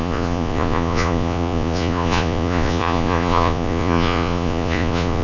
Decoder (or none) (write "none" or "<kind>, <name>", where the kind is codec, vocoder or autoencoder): vocoder, Vocos